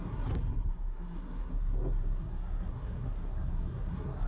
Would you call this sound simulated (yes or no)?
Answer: yes